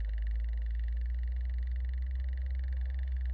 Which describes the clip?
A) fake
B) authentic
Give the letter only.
A